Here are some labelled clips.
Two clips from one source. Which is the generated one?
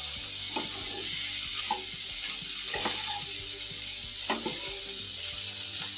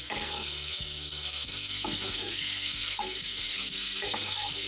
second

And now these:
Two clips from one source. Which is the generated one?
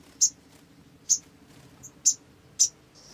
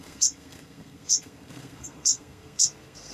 second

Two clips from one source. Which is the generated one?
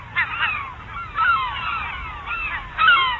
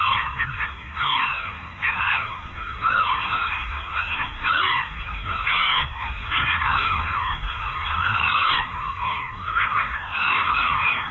second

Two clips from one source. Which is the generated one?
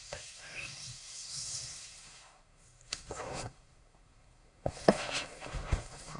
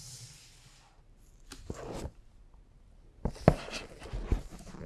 first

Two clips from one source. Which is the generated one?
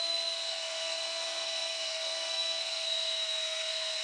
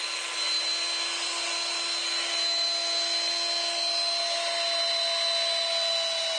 first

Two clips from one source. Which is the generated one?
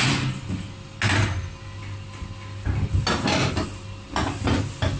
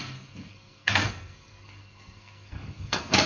second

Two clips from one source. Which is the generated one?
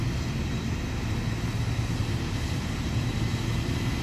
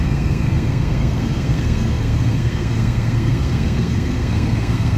second